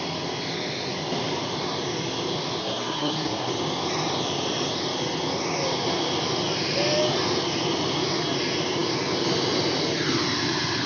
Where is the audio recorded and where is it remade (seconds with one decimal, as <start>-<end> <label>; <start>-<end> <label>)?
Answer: 0.0-2.6 recorded; 2.6-3.5 remade; 3.5-10.9 recorded